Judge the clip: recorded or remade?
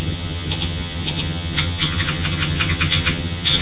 remade